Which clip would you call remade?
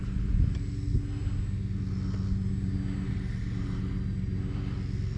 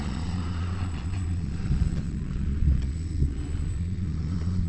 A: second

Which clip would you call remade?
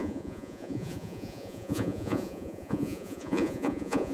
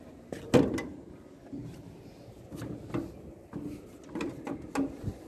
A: first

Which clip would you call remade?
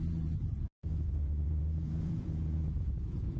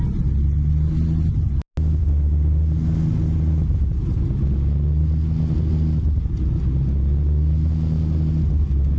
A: first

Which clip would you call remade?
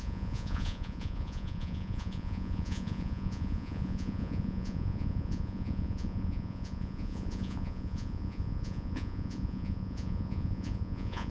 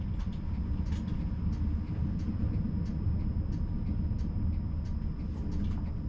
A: first